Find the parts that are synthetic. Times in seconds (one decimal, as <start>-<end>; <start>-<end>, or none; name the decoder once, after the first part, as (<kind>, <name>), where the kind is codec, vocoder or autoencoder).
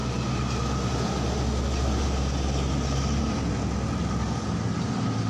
none